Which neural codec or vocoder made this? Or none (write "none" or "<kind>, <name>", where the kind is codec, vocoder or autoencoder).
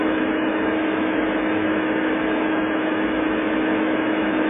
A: autoencoder, DAC-VAE